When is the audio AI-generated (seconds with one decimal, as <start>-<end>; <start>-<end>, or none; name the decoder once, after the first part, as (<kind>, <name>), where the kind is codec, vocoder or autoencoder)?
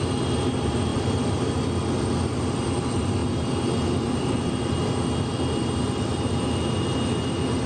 none